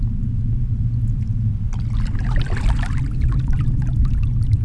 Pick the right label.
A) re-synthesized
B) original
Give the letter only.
B